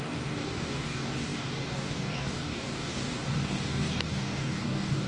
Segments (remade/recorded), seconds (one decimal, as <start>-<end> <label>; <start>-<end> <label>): 0.0-5.1 remade